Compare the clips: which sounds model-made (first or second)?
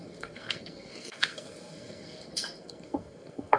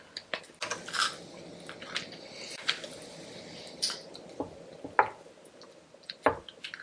first